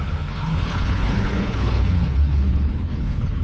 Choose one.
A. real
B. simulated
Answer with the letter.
B